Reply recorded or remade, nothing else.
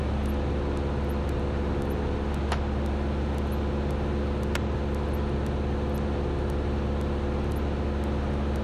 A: recorded